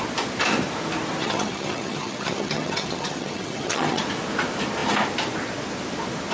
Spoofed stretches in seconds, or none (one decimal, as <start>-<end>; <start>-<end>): 1.2-4.0